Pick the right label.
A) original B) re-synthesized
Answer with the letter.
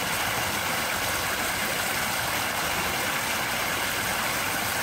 A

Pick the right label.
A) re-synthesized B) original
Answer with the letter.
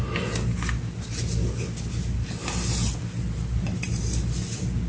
B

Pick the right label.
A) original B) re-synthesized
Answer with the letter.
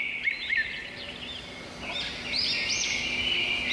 A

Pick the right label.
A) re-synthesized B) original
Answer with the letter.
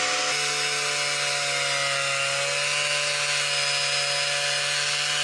B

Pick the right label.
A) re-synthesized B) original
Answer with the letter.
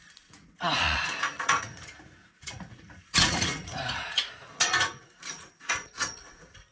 A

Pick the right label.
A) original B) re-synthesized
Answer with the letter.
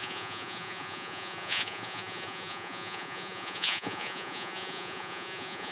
B